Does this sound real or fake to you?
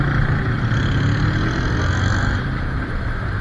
real